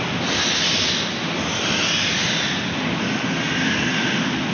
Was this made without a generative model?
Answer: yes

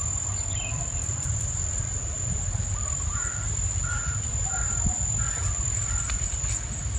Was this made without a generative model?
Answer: yes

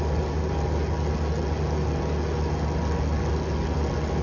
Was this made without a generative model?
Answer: yes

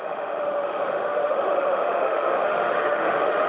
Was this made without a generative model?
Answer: no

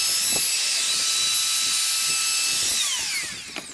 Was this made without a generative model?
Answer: yes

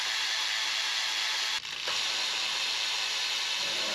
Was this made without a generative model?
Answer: yes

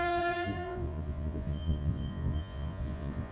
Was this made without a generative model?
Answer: no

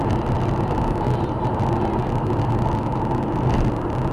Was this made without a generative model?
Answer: yes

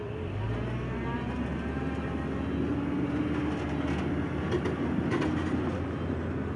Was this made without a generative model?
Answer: yes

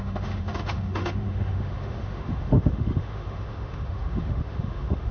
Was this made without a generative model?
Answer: no